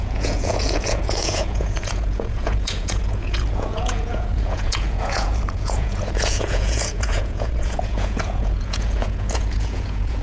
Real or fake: fake